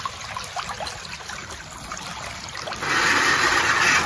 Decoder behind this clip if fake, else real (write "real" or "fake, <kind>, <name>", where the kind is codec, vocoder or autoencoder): real